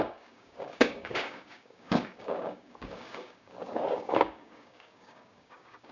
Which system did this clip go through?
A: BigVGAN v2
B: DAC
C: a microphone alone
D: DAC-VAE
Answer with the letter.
B